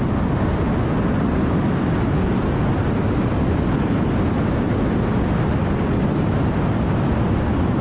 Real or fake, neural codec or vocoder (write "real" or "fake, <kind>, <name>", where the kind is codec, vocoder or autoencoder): real